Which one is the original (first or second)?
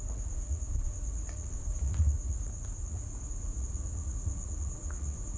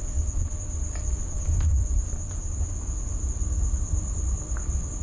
second